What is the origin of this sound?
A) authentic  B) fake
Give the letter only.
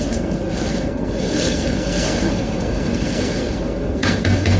B